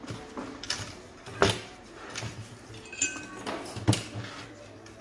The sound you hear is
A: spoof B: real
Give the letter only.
B